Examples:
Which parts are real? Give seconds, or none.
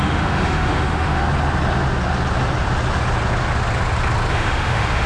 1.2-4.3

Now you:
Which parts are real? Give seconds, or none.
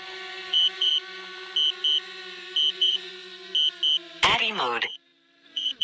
0.9-2.7; 3.1-4.6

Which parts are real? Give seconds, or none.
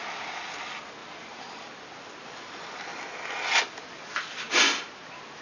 0.0-1.0; 1.8-5.4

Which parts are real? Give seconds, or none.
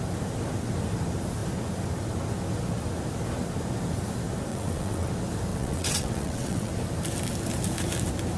0.0-4.5; 5.1-5.5; 6.7-8.4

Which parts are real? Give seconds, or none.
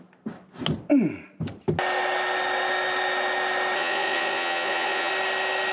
0.0-3.8; 5.1-5.7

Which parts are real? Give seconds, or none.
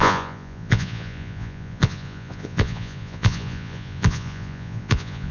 none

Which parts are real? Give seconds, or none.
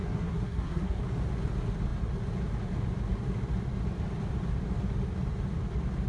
1.0-6.1